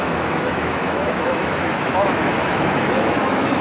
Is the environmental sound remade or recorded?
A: remade